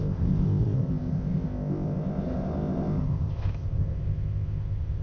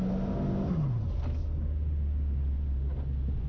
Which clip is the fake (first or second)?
first